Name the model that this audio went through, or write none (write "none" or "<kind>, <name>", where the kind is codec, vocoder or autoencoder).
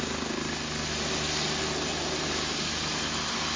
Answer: none